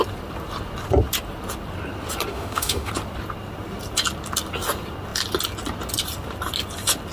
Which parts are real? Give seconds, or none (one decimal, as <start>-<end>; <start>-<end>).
0.0-2.3; 2.9-7.1